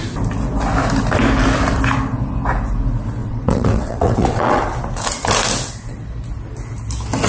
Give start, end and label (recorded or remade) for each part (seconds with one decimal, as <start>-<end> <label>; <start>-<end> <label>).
0.0-3.2 recorded; 3.2-4.6 remade; 4.6-7.3 recorded